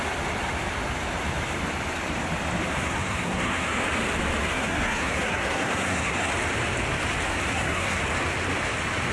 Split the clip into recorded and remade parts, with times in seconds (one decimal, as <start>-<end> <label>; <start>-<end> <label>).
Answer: 0.0-2.7 recorded; 2.7-3.8 remade; 3.8-4.4 recorded; 4.4-6.3 remade; 6.3-7.3 recorded; 7.3-8.0 remade; 8.0-9.1 recorded